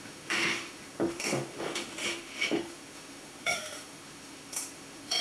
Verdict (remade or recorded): remade